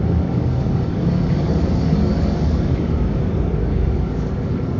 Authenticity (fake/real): fake